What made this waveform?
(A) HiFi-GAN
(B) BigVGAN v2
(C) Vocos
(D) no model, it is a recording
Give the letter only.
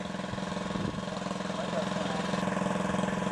D